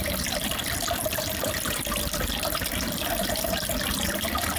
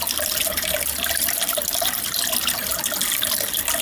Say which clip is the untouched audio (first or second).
second